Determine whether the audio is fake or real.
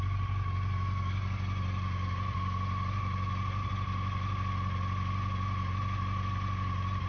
real